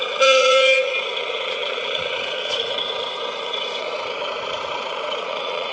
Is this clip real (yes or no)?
no